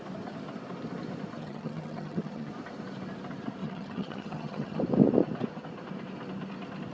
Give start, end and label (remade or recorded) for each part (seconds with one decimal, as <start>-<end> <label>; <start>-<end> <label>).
0.0-1.4 recorded; 1.4-2.5 remade; 2.5-3.6 recorded; 3.6-4.8 remade; 4.8-6.9 recorded